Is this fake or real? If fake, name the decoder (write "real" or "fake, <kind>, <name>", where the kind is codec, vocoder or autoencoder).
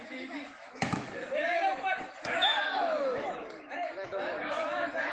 fake, autoencoder, DAC-VAE